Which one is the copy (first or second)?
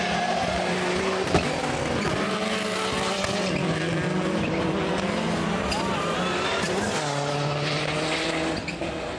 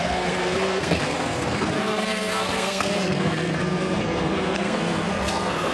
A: second